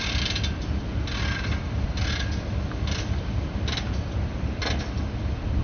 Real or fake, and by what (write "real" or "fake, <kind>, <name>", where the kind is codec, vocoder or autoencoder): real